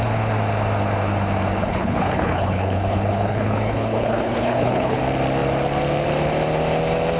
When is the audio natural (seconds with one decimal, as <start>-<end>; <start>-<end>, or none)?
0.0-1.6; 5.0-7.2

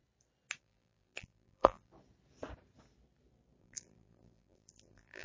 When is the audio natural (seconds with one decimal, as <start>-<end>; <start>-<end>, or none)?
0.0-0.6; 1.9-3.6